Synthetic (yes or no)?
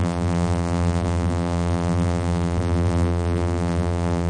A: yes